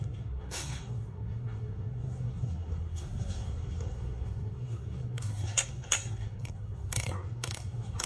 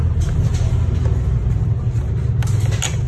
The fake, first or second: first